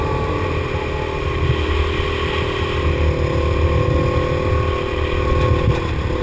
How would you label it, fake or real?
real